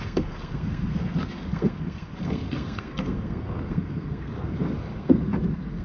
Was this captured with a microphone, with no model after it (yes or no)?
no